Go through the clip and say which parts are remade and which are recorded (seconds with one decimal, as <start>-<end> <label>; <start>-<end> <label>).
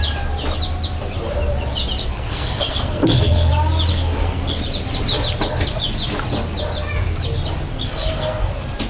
0.0-2.0 recorded; 2.0-3.5 remade; 3.5-3.9 recorded; 3.9-4.6 remade; 4.6-7.7 recorded; 7.7-8.5 remade; 8.5-8.9 recorded